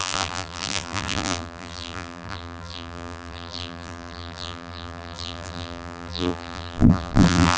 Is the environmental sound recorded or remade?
remade